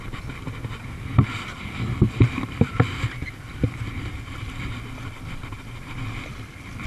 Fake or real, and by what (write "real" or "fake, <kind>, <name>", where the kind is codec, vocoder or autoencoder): real